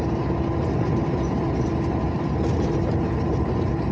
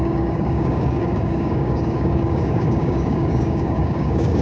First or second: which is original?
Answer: first